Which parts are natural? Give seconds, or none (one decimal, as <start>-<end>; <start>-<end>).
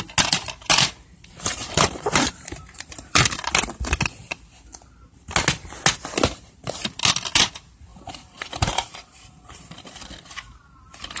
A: 0.0-0.7; 3.2-7.9; 9.9-11.2